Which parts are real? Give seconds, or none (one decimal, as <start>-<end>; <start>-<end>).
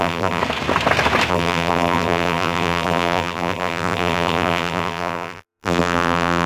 0.4-1.3